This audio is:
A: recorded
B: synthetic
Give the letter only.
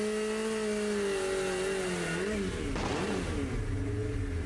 A